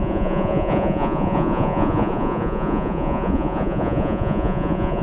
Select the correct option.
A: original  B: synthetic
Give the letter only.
B